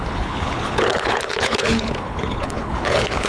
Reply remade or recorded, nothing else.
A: remade